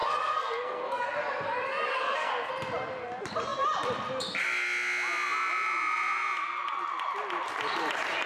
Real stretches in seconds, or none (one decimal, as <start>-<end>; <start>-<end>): 1.1-1.9; 2.5-8.3